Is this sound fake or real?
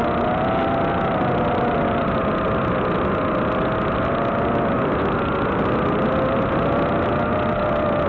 real